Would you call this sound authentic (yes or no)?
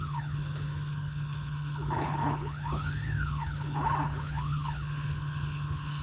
no